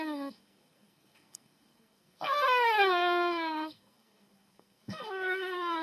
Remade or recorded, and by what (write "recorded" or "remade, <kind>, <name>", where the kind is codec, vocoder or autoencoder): remade, codec, SNAC